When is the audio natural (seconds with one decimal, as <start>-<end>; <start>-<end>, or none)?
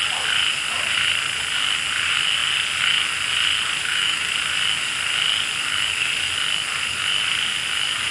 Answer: 0.0-3.8; 4.3-8.1